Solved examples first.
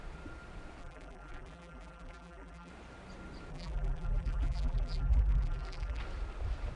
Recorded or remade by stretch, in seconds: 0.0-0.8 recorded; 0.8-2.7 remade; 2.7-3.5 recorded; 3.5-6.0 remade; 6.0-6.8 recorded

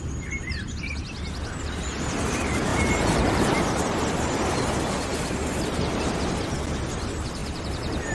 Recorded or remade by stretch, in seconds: 0.0-2.7 recorded; 2.7-3.6 remade; 3.6-5.1 recorded; 5.1-6.2 remade; 6.2-8.1 recorded

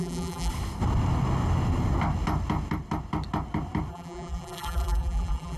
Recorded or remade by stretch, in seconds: 0.0-0.5 remade; 0.5-3.9 recorded; 3.9-5.6 remade

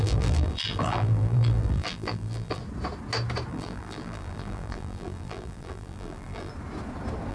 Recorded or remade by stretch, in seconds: 0.0-2.6 remade; 2.6-3.5 recorded; 3.5-6.5 remade; 6.5-7.3 recorded